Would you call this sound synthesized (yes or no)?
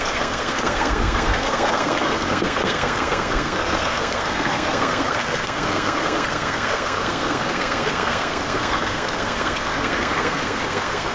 yes